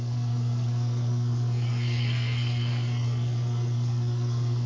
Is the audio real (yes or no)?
no